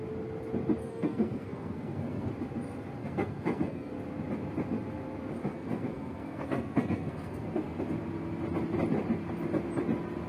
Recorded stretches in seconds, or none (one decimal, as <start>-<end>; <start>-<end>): 0.0-0.8; 2.3-3.0; 3.9-5.4; 7.8-10.3